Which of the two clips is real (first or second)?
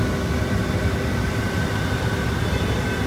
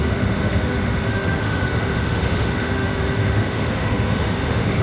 first